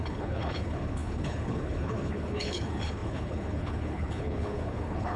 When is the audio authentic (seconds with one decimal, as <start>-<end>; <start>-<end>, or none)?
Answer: none